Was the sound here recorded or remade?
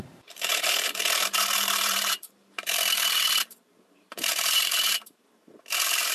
remade